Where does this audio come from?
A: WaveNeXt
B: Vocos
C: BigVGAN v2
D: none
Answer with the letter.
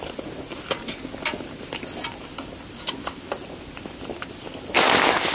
D